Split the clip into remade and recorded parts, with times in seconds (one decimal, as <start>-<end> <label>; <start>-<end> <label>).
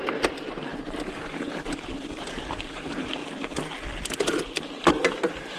0.0-3.2 remade; 3.2-4.9 recorded; 4.9-5.6 remade